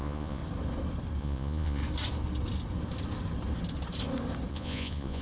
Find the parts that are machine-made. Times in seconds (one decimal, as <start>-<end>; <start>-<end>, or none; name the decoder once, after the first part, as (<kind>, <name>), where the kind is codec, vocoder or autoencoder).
0.0-0.4 (vocoder, Vocos); 1.2-1.8; 4.5-5.2